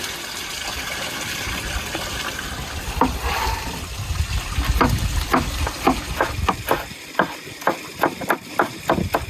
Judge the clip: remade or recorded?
remade